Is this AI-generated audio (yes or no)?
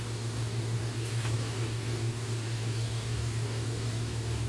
yes